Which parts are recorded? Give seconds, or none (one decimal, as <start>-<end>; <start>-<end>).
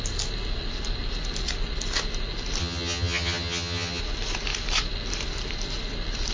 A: 0.0-2.6; 4.0-6.3